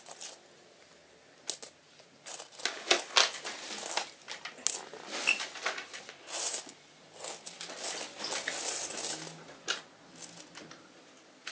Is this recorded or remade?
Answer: recorded